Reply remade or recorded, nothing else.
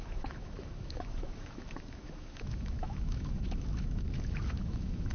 remade